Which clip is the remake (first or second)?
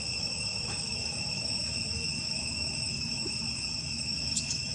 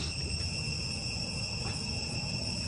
first